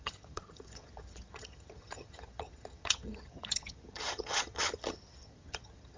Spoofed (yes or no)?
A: yes